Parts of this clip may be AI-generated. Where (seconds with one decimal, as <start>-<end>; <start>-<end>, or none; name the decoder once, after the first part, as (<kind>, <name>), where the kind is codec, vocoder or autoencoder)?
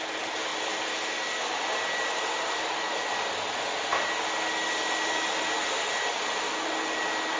none